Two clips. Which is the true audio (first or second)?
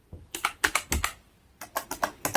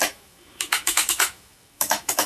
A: first